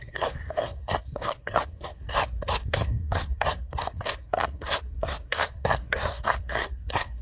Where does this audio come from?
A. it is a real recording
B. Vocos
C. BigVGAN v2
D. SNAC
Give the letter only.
D